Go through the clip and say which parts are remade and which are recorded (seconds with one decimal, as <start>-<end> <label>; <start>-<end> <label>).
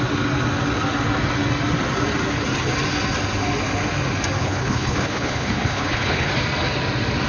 0.0-4.4 recorded; 4.4-6.3 remade; 6.3-7.3 recorded